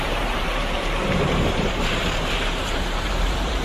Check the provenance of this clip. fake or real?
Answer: fake